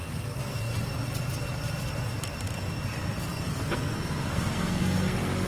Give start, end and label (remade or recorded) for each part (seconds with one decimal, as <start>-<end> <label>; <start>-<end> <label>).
0.0-0.7 remade; 0.7-3.3 recorded; 3.3-5.5 remade